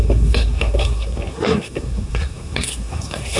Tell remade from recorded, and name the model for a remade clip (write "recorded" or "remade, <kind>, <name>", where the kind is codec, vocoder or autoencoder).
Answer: remade, codec, SNAC